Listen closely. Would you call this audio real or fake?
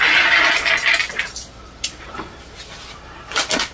real